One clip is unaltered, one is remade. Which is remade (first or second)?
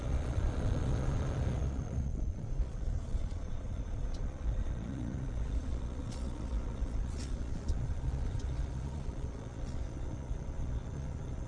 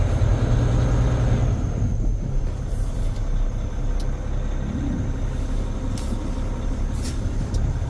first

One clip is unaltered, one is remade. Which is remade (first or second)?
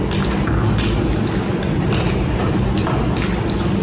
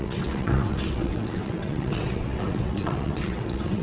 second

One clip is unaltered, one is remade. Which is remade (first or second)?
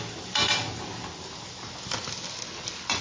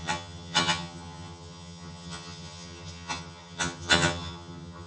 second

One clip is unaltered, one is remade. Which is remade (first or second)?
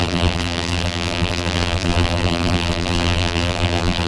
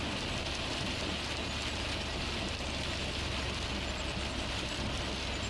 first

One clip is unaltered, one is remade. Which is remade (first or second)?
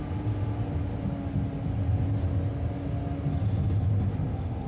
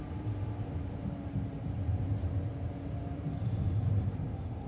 second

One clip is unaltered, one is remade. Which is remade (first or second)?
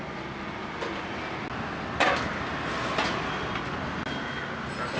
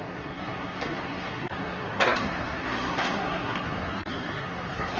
second